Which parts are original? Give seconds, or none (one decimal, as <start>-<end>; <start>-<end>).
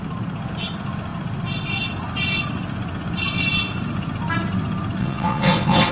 0.0-5.0